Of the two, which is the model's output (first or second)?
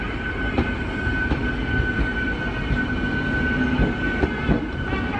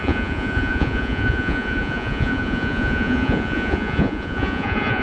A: second